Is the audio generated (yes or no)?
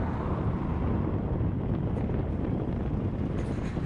no